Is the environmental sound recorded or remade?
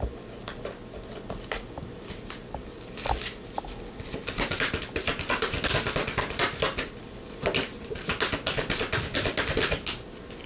recorded